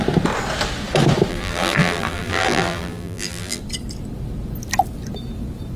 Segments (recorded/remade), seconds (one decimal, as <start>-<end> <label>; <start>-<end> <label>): 0.0-1.3 recorded; 1.3-3.6 remade; 3.6-5.8 recorded